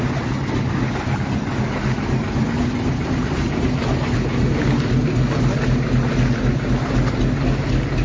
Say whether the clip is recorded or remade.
recorded